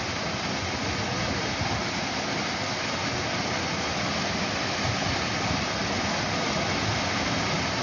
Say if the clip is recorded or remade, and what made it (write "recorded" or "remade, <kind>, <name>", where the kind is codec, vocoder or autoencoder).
recorded